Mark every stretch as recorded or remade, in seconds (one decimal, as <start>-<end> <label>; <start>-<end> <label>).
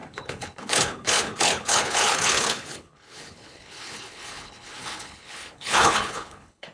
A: 0.0-6.7 remade